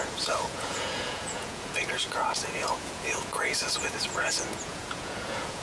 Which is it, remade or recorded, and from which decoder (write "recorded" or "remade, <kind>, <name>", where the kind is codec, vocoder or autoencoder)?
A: remade, vocoder, Vocos